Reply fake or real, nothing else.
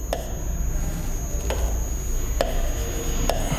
real